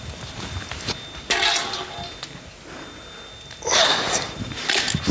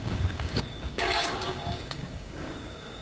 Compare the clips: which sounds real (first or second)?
first